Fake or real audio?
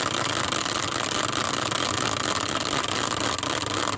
real